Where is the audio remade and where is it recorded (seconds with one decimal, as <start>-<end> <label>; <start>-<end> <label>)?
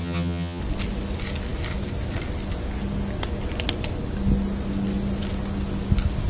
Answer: 0.0-0.6 remade; 0.6-6.3 recorded